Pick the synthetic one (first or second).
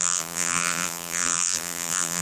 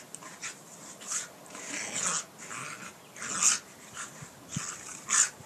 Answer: first